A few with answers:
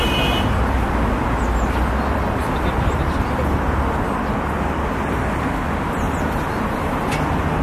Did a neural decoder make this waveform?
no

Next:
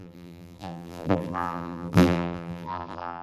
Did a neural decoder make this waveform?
yes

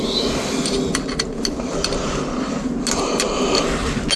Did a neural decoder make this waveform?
no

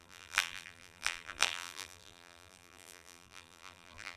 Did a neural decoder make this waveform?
yes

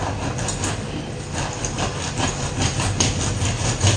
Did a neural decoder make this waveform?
no